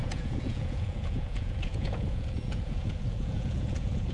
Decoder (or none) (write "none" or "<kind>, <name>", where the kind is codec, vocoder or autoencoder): vocoder, Vocos